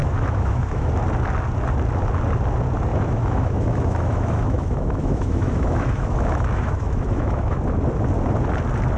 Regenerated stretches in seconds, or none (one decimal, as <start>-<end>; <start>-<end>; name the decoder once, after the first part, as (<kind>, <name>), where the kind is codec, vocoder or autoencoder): 0.0-0.9 (autoencoder, DAC-VAE); 2.9-7.6

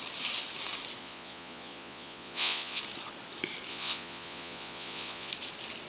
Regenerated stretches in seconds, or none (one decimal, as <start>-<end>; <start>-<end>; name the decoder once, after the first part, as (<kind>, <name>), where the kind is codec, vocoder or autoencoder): 1.0-2.8 (vocoder, Vocos); 3.7-5.3

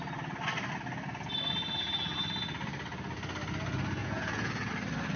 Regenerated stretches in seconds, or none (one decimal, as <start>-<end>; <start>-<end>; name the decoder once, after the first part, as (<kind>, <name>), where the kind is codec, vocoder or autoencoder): 4.0-4.7 (vocoder, Vocos)